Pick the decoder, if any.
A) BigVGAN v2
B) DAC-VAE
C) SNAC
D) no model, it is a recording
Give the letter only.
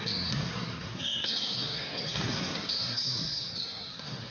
C